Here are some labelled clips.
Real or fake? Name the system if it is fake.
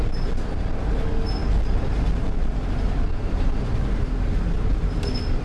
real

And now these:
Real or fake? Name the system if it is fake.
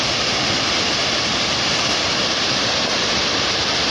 fake, vocoder, BigVGAN v2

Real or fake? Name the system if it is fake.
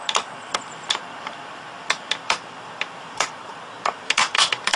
fake, vocoder, BigVGAN v2